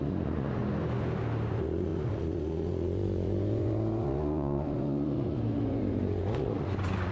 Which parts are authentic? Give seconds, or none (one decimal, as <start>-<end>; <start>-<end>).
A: 0.6-1.5